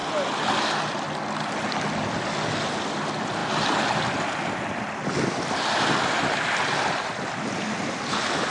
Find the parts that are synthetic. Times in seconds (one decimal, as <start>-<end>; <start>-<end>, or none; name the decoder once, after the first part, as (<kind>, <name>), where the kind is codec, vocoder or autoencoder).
none